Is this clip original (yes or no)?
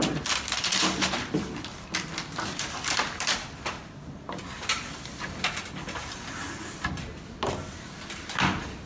yes